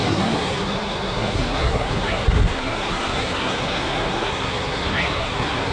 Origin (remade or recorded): remade